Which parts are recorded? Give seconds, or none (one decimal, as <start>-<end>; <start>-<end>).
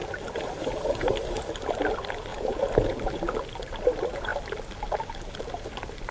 0.0-2.3; 3.1-6.1